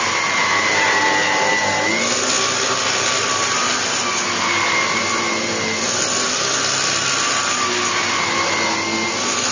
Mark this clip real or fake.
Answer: real